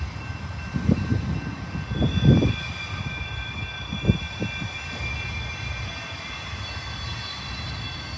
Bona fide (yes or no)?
yes